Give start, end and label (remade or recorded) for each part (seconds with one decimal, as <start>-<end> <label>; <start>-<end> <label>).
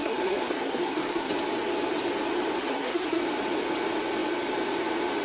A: 0.0-1.3 remade; 1.3-2.6 recorded; 2.6-3.2 remade; 3.2-5.2 recorded